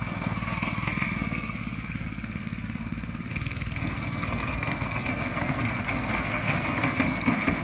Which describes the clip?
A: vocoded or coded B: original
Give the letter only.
A